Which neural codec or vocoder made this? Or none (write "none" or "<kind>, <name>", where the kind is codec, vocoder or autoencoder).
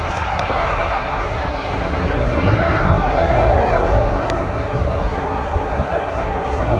codec, SNAC